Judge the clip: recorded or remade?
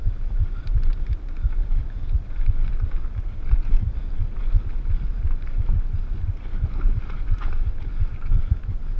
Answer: recorded